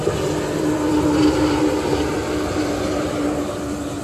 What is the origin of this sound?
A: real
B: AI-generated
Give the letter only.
A